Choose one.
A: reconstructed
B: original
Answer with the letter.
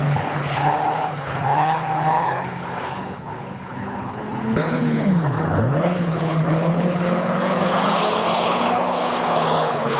A